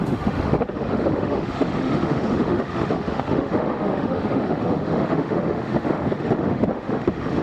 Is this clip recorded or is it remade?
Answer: remade